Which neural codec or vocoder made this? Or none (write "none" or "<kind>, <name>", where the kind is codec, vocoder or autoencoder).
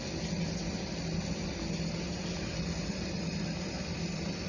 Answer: none